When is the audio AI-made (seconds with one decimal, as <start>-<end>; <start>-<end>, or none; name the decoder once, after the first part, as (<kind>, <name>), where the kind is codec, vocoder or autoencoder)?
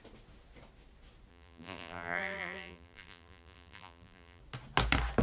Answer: 1.3-4.4 (vocoder, BigVGAN v2)